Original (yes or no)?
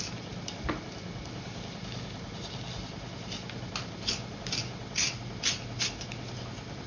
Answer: yes